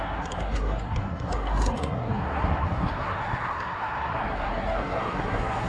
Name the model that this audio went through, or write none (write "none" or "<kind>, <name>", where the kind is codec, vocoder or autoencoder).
codec, SNAC